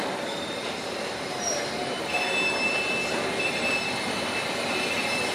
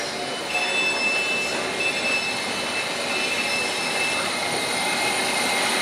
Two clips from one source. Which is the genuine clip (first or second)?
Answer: second